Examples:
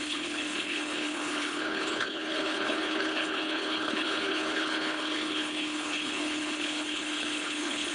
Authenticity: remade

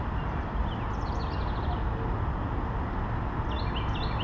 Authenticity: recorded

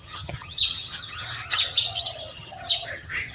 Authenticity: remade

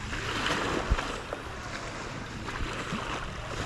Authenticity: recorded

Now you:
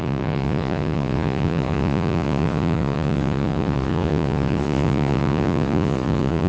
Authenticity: remade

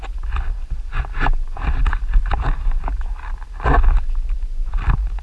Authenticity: recorded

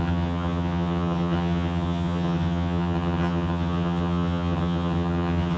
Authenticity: remade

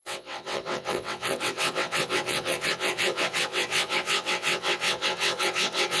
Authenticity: remade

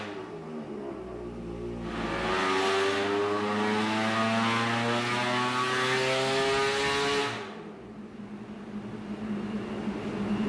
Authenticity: recorded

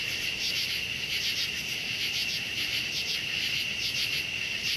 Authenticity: remade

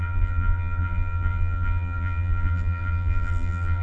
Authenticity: remade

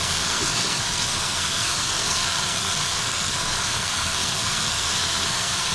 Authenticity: remade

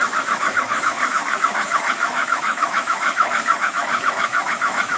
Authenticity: remade